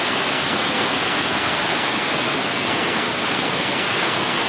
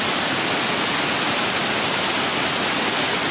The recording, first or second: second